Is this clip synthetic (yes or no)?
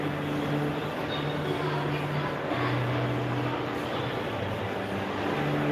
no